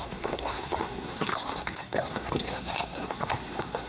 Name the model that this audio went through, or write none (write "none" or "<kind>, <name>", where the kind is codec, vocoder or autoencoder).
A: codec, SNAC